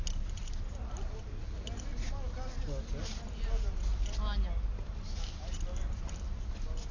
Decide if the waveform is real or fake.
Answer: real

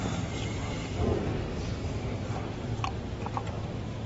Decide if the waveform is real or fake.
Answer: real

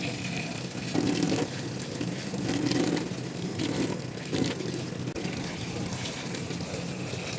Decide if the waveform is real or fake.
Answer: real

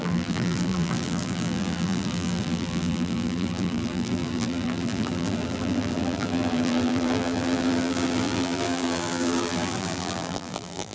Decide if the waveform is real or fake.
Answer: fake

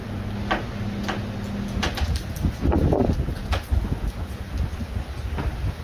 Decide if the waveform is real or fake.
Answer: real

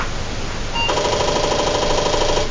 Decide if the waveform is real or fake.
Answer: real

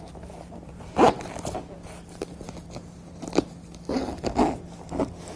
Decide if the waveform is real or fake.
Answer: real